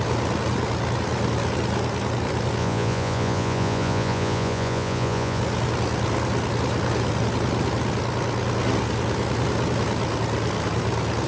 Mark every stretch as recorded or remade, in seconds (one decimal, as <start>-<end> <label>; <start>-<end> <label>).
0.0-2.6 recorded; 2.6-5.4 remade; 5.4-11.3 recorded